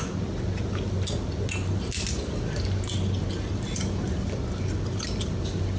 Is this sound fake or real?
real